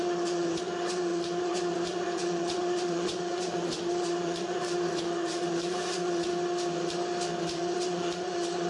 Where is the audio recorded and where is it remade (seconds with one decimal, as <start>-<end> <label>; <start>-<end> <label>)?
0.0-6.3 remade; 6.3-7.4 recorded; 7.4-8.7 remade